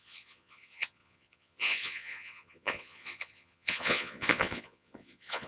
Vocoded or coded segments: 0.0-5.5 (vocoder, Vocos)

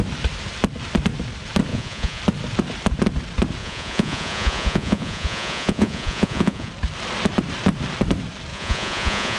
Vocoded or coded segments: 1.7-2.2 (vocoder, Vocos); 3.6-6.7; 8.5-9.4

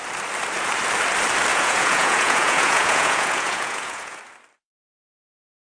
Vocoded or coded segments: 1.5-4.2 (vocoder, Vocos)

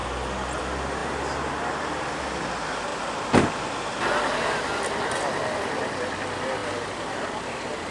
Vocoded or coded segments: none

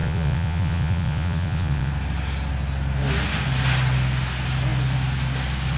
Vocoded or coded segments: 0.0-1.9 (vocoder, Vocos)

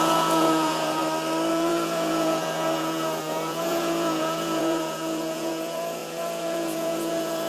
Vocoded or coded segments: 0.0-1.0 (vocoder, Vocos); 1.5-7.5

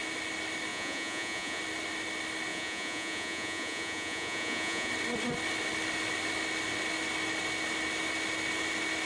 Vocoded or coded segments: 0.7-1.6 (vocoder, Vocos); 2.5-4.9